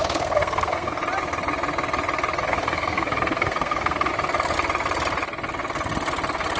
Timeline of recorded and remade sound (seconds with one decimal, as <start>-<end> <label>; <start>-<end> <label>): 0.0-1.0 remade; 1.0-2.4 recorded; 2.4-4.1 remade; 4.1-6.6 recorded